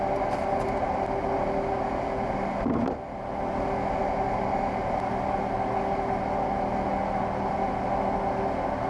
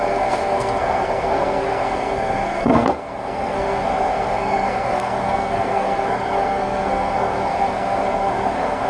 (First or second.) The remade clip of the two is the second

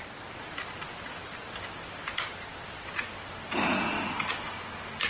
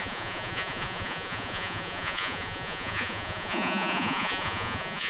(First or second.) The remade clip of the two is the second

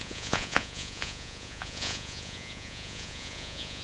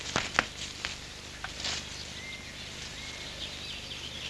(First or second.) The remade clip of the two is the first